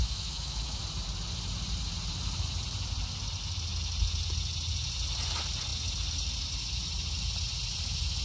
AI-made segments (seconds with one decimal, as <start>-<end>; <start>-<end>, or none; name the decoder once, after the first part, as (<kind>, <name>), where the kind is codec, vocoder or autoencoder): 0.0-0.8 (autoencoder, DAC-VAE)